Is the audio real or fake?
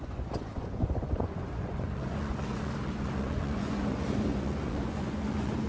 fake